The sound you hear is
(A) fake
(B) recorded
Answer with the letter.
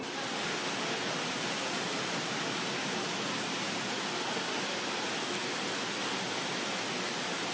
B